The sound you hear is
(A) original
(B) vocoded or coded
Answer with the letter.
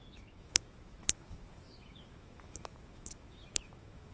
B